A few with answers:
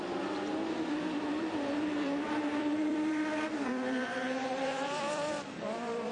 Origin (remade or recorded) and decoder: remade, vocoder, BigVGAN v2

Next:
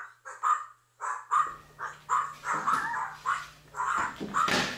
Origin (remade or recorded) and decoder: recorded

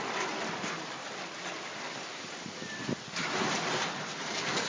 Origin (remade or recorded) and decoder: remade, vocoder, BigVGAN v2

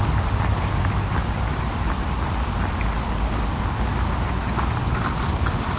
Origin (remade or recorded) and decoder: recorded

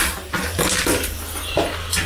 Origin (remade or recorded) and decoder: recorded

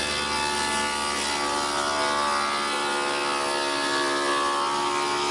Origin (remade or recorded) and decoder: recorded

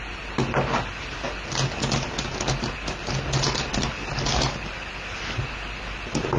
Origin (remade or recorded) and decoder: recorded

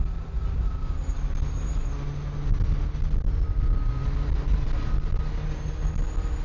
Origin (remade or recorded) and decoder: recorded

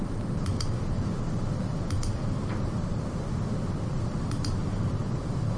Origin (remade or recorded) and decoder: remade, vocoder, BigVGAN v2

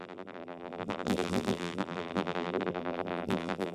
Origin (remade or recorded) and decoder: remade, vocoder, BigVGAN v2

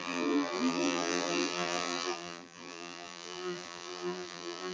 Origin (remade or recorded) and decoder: remade, vocoder, BigVGAN v2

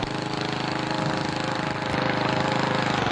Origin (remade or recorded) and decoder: recorded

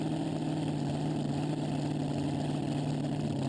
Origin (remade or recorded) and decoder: recorded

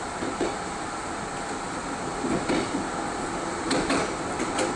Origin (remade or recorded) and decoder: recorded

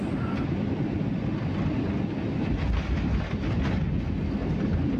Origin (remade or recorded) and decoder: recorded